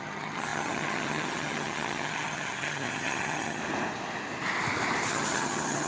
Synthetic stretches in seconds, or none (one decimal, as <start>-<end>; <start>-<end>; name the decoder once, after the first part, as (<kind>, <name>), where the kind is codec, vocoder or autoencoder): 0.0-3.6 (vocoder, HiFi-GAN); 5.1-5.9